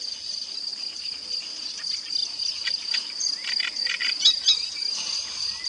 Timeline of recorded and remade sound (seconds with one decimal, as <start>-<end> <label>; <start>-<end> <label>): 0.0-5.7 recorded